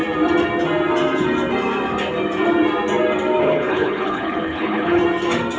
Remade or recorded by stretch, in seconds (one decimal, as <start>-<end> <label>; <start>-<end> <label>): 0.0-3.4 recorded; 3.4-5.0 remade; 5.0-5.6 recorded